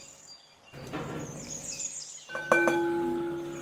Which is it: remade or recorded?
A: recorded